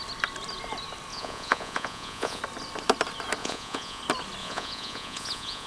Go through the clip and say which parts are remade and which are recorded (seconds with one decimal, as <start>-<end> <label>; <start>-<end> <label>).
0.0-1.1 recorded; 1.1-2.4 remade; 2.4-3.4 recorded; 3.4-4.0 remade; 4.0-4.4 recorded; 4.4-5.7 remade

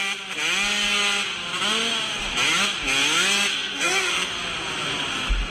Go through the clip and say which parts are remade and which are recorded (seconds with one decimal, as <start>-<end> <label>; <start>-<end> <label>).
0.0-3.5 recorded; 3.5-4.3 remade; 4.3-5.5 recorded

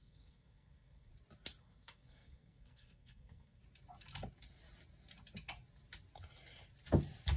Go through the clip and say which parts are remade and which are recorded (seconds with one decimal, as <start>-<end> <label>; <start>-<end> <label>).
0.0-1.1 remade; 1.1-1.6 recorded; 1.6-3.6 remade; 3.6-7.4 recorded

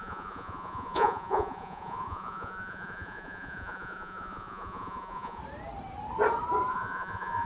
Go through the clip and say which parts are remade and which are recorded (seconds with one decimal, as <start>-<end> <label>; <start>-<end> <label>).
0.0-5.4 remade; 5.4-6.7 recorded; 6.7-7.5 remade